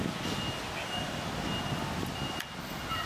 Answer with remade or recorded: recorded